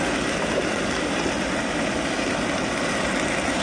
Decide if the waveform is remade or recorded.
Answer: recorded